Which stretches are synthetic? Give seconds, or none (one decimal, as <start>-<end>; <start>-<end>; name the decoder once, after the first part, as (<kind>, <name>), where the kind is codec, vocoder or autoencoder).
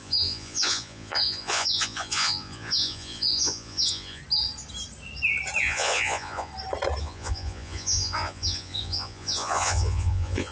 0.0-4.2 (vocoder, Vocos); 5.6-6.5; 7.0-10.5